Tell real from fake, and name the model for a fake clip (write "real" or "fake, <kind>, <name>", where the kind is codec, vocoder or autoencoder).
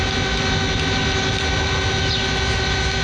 real